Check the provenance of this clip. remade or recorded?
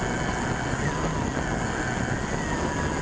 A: recorded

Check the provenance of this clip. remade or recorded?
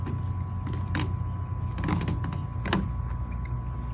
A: recorded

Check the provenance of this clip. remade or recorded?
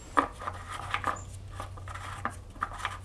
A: recorded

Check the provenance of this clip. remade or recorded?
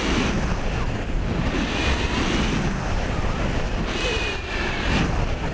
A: recorded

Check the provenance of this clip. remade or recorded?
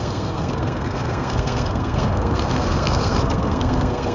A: remade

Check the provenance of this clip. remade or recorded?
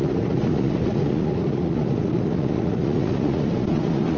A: remade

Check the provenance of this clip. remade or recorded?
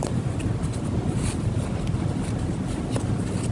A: recorded